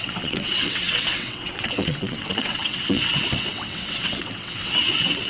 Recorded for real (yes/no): no